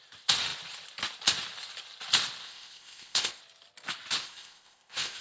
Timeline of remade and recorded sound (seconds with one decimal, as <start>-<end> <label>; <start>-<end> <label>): 0.0-2.4 recorded; 2.4-3.4 remade; 3.4-4.2 recorded; 4.2-5.2 remade